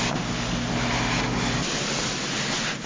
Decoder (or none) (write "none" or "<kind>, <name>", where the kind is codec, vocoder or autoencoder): none